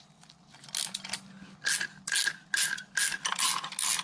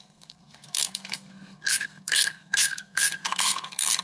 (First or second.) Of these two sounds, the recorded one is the first